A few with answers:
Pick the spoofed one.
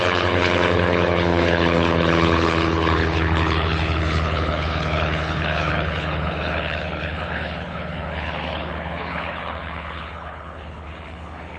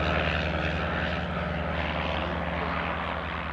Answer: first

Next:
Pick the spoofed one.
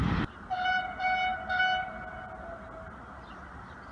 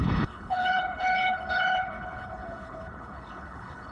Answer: second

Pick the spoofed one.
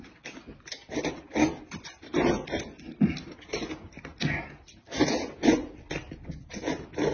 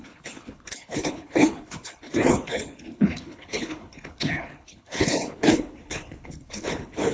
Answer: second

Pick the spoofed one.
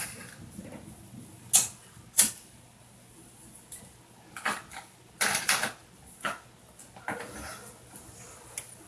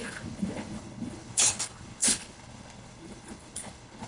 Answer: second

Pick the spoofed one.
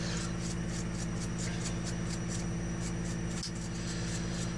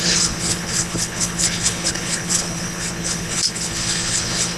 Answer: second